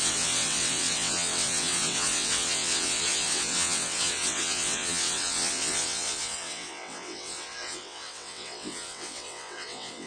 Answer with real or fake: fake